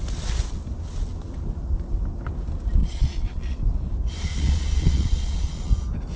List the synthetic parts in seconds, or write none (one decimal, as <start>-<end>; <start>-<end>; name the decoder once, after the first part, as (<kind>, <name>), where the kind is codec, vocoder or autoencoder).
2.8-3.6 (vocoder, Vocos); 4.3-5.7